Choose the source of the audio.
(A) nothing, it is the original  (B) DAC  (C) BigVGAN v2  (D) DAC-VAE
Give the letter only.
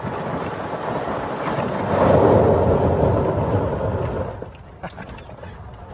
A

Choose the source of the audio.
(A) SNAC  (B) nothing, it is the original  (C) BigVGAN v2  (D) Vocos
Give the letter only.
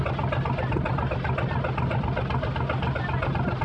B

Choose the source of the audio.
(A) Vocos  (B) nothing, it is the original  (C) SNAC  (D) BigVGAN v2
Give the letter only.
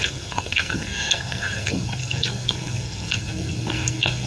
C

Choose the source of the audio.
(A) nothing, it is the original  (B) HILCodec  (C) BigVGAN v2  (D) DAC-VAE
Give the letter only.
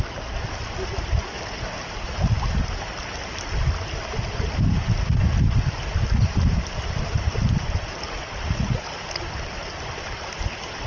A